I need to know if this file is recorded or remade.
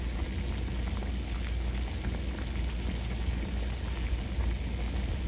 recorded